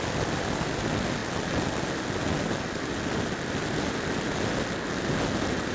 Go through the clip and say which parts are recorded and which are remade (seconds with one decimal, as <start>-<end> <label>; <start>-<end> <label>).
0.0-5.7 recorded